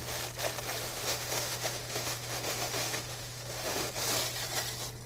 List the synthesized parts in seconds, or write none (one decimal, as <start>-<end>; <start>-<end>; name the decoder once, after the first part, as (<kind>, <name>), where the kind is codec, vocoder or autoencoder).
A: 0.8-3.9 (autoencoder, DAC-VAE)